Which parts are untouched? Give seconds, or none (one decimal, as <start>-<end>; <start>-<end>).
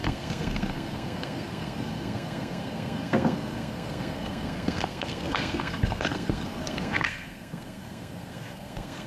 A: none